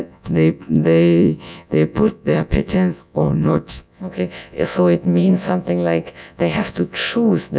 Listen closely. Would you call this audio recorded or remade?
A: remade